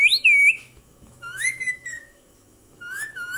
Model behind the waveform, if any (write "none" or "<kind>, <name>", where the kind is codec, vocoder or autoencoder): autoencoder, DAC-VAE